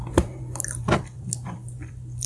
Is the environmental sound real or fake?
fake